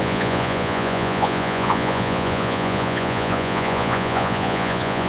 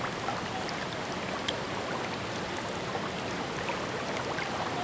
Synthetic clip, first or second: first